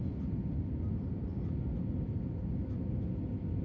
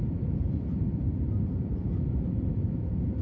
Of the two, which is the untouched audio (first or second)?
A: first